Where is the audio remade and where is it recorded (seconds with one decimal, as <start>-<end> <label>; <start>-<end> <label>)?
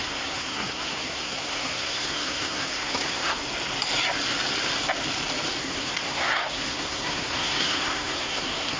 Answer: 0.0-3.4 remade; 3.4-5.6 recorded; 5.6-8.8 remade